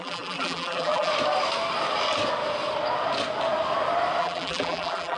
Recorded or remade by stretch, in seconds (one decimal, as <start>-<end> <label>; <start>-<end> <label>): 0.0-1.1 remade; 1.1-4.2 recorded; 4.2-5.2 remade